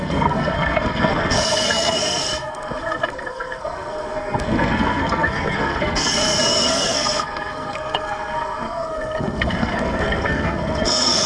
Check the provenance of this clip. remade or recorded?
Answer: remade